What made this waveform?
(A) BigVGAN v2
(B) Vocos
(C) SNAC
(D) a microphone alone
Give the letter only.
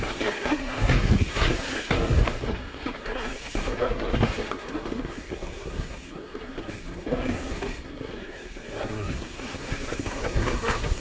C